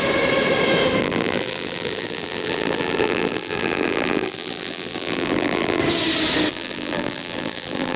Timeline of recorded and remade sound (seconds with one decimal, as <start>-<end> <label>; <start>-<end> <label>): 0.0-1.0 recorded; 1.0-5.8 remade; 5.8-6.5 recorded; 6.5-8.0 remade